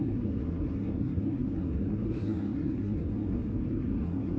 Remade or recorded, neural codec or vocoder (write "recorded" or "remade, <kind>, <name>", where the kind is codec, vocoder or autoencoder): remade, codec, SNAC